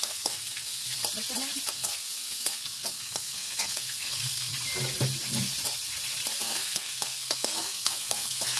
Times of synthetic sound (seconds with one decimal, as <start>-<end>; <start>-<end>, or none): 0.0-1.0; 1.7-4.5; 6.4-8.6